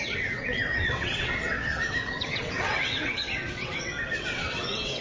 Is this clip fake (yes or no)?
yes